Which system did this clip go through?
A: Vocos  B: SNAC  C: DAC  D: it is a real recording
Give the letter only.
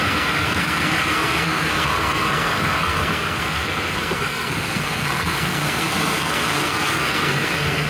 B